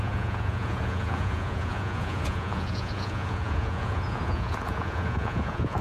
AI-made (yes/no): yes